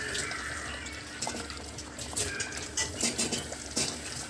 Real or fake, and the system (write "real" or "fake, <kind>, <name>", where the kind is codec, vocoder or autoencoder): real